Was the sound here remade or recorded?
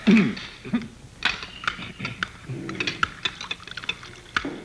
recorded